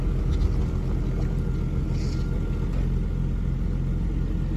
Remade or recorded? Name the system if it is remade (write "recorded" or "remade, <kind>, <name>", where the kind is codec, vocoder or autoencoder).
recorded